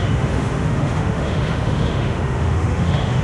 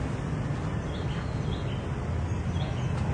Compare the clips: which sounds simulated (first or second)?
first